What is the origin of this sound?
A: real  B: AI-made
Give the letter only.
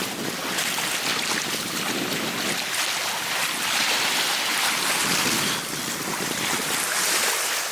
A